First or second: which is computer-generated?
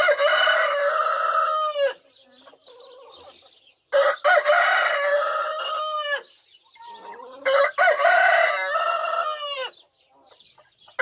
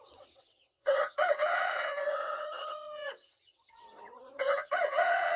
second